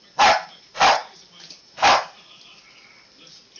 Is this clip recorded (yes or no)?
yes